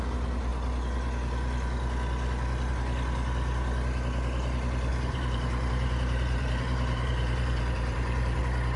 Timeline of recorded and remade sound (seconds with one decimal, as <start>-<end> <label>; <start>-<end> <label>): 0.0-4.9 recorded; 4.9-8.4 remade; 8.4-8.8 recorded